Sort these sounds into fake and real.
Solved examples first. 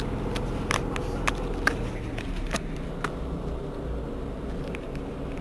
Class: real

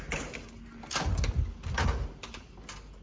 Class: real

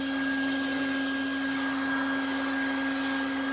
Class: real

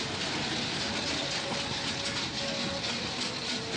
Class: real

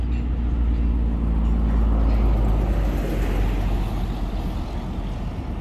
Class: real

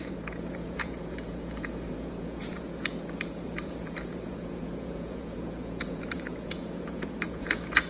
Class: fake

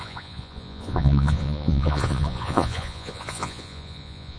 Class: fake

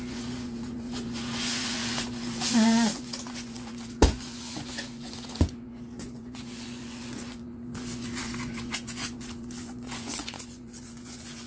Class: fake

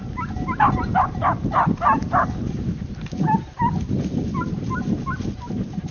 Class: real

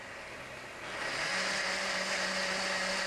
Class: real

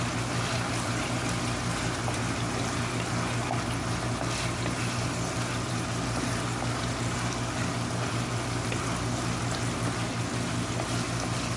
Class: real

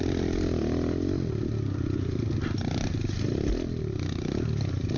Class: real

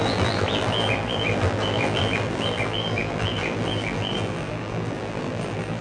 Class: fake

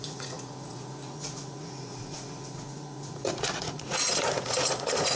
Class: fake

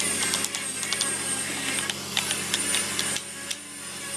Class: real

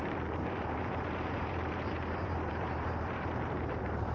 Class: fake